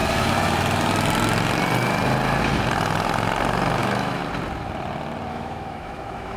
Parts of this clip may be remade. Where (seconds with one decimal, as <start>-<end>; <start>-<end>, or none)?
3.8-4.2; 5.3-6.4